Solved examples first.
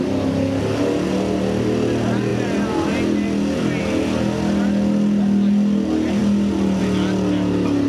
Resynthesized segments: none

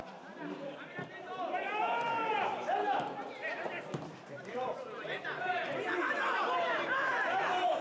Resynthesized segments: 0.0-7.8 (vocoder, BigVGAN v2)

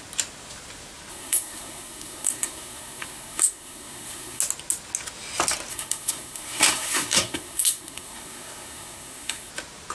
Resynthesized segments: 1.1-4.4 (codec, SNAC); 5.7-9.5

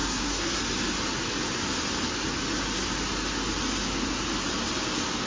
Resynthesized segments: 0.0-0.6 (codec, SNAC)

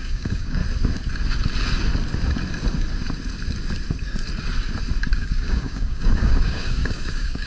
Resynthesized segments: 0.0-0.6 (codec, DAC); 5.1-7.5

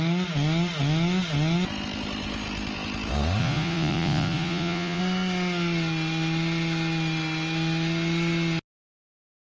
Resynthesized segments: 3.4-5.0 (vocoder, Vocos)